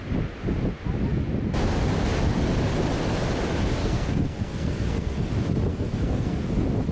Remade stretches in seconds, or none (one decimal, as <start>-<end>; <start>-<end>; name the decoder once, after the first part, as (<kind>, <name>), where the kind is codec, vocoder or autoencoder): 3.8-5.3 (codec, SNAC); 5.7-6.4